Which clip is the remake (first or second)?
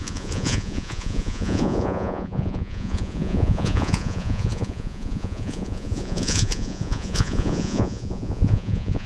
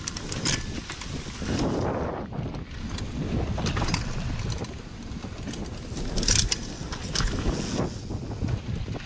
first